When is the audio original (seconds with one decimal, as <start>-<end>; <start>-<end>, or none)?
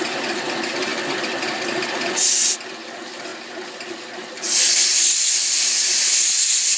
0.9-2.2; 3.3-4.3